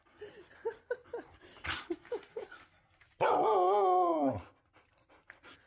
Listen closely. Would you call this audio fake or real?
real